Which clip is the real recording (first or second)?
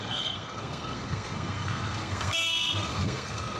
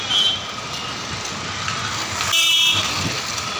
second